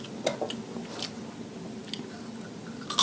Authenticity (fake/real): real